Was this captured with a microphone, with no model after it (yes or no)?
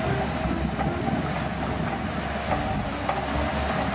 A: yes